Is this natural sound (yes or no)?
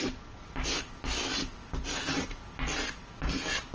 yes